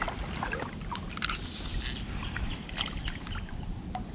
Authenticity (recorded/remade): recorded